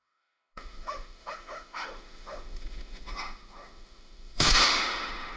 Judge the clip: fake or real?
fake